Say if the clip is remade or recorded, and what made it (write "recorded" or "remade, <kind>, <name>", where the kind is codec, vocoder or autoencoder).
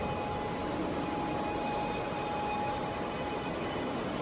recorded